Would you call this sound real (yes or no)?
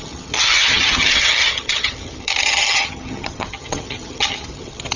no